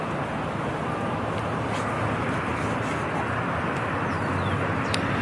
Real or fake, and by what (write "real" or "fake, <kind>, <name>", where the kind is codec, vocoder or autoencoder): real